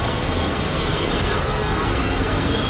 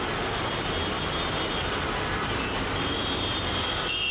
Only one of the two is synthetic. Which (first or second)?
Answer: first